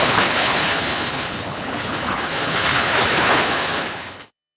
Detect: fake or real fake